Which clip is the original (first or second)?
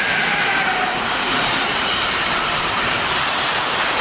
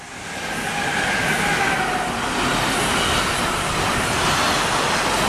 second